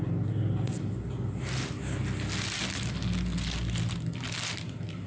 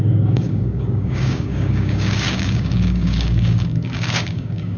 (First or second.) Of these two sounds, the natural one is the first